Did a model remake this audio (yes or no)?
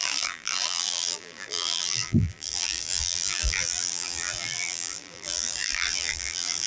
yes